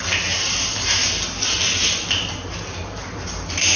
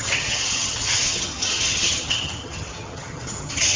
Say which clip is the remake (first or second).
second